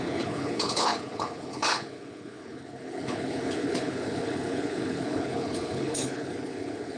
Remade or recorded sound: remade